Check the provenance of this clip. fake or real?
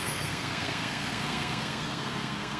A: fake